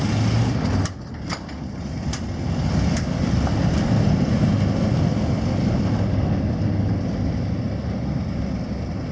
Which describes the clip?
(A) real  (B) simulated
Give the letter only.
A